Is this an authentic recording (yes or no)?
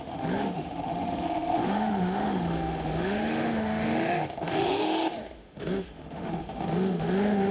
no